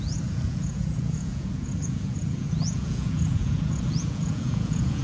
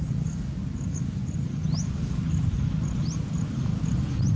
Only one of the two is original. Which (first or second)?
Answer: second